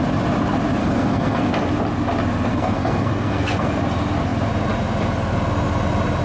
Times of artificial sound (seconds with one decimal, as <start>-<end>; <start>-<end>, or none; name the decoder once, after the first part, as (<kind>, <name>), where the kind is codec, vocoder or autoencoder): 0.8-1.5 (codec, SNAC); 2.5-3.8